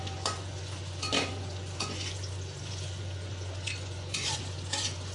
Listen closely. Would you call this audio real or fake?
fake